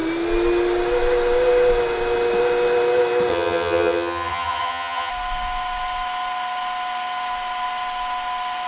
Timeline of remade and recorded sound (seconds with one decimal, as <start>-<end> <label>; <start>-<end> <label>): 0.0-3.3 recorded; 3.3-5.1 remade; 5.1-8.7 recorded